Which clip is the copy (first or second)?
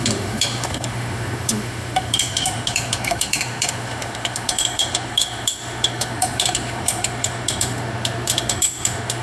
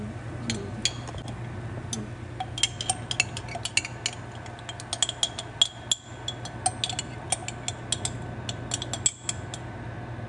first